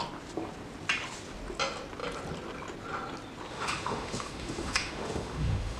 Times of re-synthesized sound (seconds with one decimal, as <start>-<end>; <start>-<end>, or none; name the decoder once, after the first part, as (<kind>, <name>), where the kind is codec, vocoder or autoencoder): 3.5-5.8 (autoencoder, DAC-VAE)